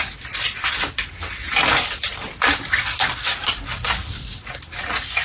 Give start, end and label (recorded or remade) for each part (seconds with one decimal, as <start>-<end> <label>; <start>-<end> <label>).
0.0-2.1 recorded; 2.1-3.5 remade; 3.5-5.2 recorded